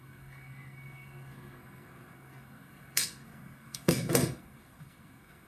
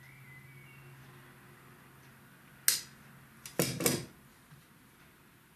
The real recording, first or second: second